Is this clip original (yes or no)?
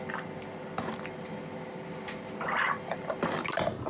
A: yes